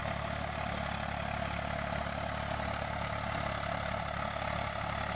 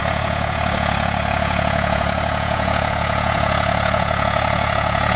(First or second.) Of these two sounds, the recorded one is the first